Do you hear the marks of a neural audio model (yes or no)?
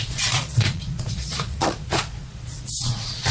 yes